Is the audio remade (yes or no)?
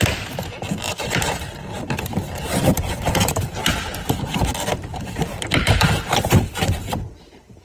yes